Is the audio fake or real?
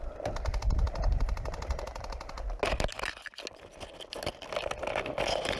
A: real